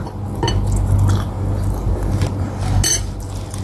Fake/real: real